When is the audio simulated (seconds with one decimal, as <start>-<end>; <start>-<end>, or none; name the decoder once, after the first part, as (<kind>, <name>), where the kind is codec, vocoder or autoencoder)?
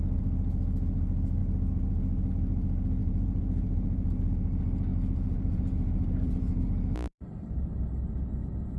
3.0-4.3 (vocoder, BigVGAN v2); 4.9-7.8